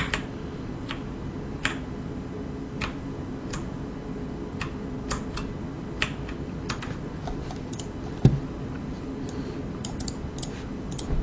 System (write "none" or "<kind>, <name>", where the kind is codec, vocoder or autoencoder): none